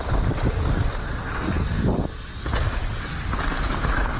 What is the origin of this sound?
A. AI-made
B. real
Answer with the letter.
B